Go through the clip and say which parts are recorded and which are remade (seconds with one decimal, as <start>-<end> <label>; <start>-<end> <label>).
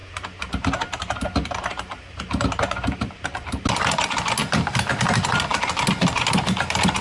0.0-3.7 remade; 3.7-4.4 recorded; 4.4-4.9 remade; 4.9-7.0 recorded